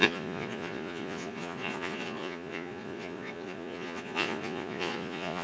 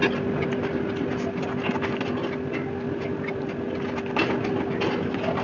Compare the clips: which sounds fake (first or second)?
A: first